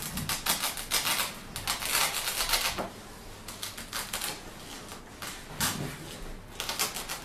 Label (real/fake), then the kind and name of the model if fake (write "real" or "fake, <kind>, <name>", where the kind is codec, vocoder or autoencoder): real